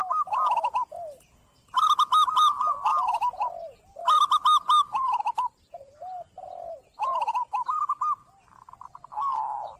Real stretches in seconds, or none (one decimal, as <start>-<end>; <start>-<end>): 0.0-2.9; 3.4-9.8

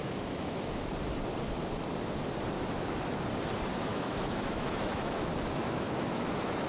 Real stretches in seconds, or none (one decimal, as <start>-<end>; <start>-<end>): 0.9-3.9